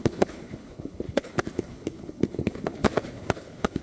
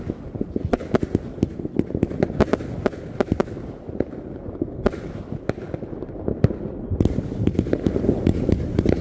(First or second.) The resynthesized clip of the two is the first